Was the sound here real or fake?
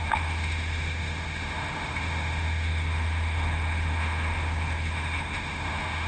fake